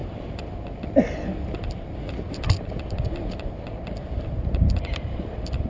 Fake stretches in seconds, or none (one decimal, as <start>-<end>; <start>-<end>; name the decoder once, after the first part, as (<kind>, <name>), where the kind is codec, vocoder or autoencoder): none